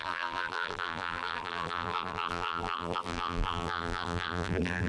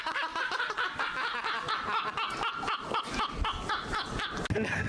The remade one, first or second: first